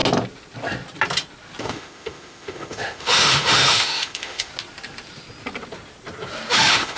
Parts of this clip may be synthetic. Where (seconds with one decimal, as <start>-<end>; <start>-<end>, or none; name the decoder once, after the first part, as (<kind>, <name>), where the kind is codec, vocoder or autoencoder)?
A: 1.6-4.5 (autoencoder, DAC-VAE); 6.5-7.0

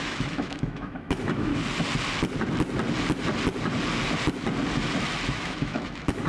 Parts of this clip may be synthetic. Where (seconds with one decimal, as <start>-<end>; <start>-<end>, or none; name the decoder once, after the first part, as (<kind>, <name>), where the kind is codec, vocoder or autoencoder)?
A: 0.0-1.5 (autoencoder, DAC-VAE); 5.3-6.3

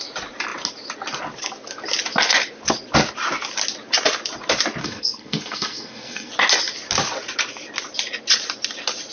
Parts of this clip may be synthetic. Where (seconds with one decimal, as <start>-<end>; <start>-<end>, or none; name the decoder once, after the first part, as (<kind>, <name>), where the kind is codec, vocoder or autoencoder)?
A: 4.8-6.3 (codec, SNAC)

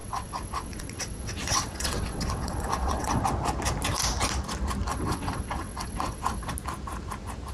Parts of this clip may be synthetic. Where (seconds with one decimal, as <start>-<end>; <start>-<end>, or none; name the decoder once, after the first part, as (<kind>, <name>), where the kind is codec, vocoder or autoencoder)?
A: 0.0-3.2 (vocoder, WaveNeXt); 4.9-6.5

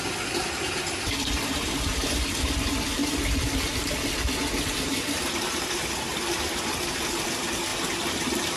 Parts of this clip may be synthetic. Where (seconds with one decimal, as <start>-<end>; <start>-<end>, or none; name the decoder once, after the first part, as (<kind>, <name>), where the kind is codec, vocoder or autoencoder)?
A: 3.0-7.3 (vocoder, BigVGAN v2)

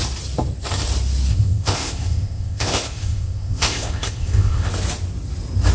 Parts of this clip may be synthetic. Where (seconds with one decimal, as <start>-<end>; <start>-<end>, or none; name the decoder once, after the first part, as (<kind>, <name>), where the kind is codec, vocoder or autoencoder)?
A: 1.3-4.7 (codec, ZipCodec)